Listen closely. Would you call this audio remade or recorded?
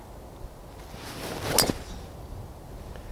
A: recorded